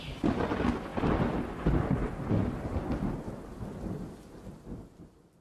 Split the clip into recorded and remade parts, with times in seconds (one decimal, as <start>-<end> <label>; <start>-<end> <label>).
0.0-5.4 recorded

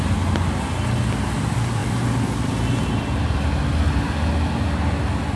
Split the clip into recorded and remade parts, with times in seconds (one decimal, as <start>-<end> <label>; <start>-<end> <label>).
0.0-5.4 recorded